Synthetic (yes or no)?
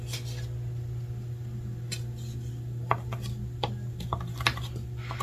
no